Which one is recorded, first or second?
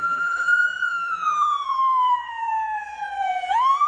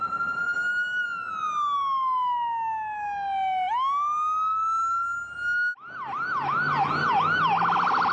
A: second